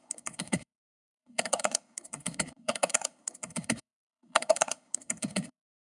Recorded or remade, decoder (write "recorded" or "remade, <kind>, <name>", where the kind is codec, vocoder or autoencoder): remade, codec, SNAC